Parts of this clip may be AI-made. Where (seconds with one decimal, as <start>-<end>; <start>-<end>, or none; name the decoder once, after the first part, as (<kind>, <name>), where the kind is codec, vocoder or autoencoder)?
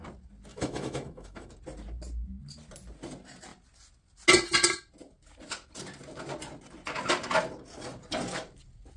0.5-1.5 (autoencoder, DAC-VAE)